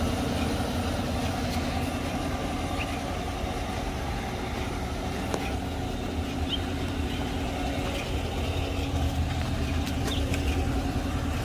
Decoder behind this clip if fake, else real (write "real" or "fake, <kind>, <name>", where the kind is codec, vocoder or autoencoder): real